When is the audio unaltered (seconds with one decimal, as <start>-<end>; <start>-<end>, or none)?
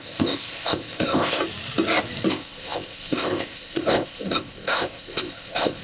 1.4-2.3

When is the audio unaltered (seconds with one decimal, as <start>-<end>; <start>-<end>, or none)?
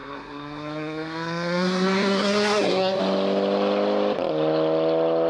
3.0-5.3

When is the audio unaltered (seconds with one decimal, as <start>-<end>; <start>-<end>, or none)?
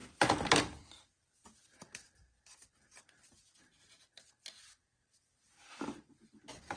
0.0-6.8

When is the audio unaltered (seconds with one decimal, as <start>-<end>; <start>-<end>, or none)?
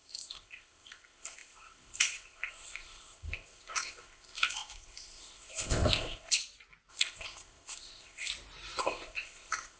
6.4-6.9; 8.3-8.8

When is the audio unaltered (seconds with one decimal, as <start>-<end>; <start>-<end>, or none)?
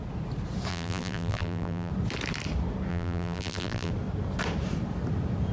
0.0-0.7; 1.9-2.9; 3.9-5.5